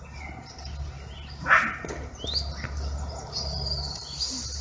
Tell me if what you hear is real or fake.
real